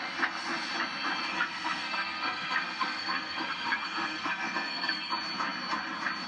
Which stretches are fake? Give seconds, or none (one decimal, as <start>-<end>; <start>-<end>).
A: 1.3-5.1